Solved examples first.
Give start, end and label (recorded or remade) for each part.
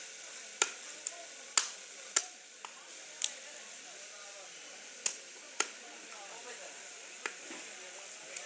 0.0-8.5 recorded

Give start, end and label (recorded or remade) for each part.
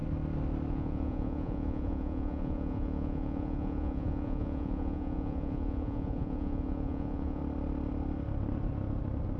0.0-0.7 recorded; 0.7-7.4 remade; 7.4-9.4 recorded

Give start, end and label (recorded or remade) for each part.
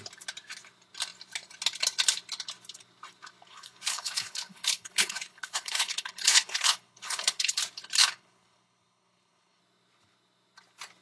0.0-3.5 recorded; 3.5-7.6 remade; 7.6-8.0 recorded; 8.0-9.6 remade; 9.6-11.0 recorded